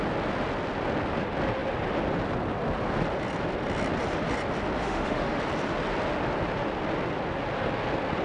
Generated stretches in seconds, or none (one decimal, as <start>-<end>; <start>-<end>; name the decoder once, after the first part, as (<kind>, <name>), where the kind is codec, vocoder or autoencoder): 4.8-5.4 (autoencoder, DAC-VAE)